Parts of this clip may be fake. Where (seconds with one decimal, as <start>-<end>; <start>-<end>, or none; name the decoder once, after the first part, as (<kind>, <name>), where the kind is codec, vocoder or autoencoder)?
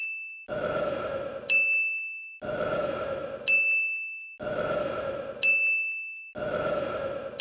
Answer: none